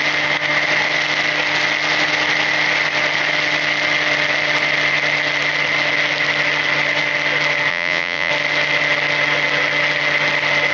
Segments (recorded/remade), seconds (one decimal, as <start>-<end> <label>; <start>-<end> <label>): 0.0-7.7 recorded; 7.7-8.3 remade; 8.3-10.7 recorded

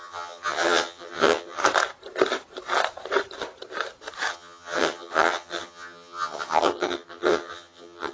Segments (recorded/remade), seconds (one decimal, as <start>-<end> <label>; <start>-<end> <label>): 0.0-1.6 remade; 1.6-4.3 recorded; 4.3-8.1 remade

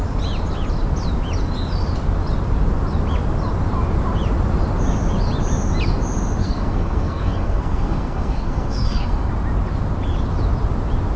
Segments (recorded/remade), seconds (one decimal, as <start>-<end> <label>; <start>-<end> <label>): 0.0-6.4 recorded; 6.4-9.3 remade; 9.3-11.2 recorded

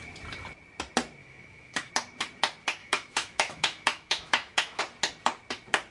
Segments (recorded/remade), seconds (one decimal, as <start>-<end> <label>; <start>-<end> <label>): 0.0-1.2 recorded; 1.2-1.9 remade; 1.9-2.8 recorded; 2.8-4.8 remade; 4.8-5.9 recorded